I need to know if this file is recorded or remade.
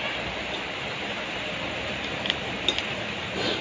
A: recorded